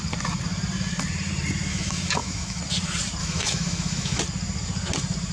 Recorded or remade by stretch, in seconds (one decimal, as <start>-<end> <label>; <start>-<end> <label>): 0.0-1.7 recorded; 1.7-2.6 remade; 2.6-3.2 recorded; 3.2-4.2 remade; 4.2-5.3 recorded